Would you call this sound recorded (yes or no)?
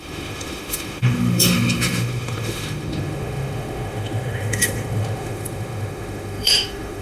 no